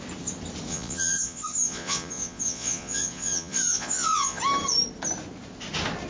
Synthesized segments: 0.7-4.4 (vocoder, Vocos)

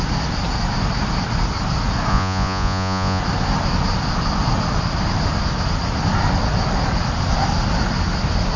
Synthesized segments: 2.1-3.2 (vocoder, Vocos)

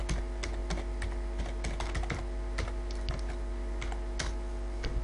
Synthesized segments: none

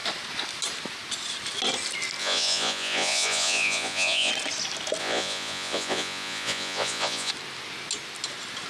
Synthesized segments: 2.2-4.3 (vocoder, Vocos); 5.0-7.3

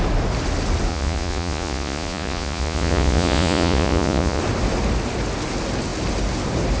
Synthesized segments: 0.9-4.4 (vocoder, Vocos)

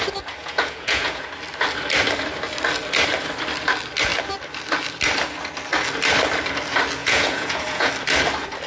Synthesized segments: 0.4-1.3 (vocoder, Vocos); 7.0-7.9

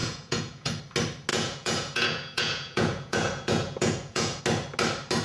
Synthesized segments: 0.0-0.8 (vocoder, Vocos); 1.3-4.4

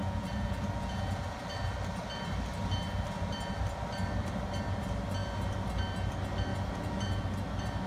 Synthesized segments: 0.0-1.2 (vocoder, Vocos); 6.5-7.2